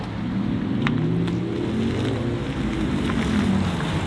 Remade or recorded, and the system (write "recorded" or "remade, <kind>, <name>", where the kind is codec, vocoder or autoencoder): recorded